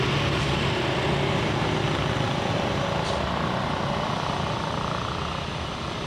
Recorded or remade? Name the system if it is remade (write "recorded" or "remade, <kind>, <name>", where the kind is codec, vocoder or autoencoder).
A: recorded